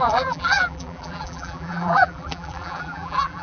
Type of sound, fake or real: fake